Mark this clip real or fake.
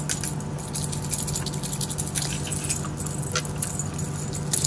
real